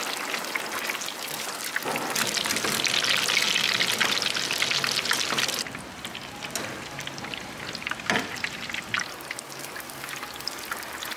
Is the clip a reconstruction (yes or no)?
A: no